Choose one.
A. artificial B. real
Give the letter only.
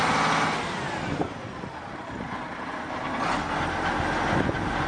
B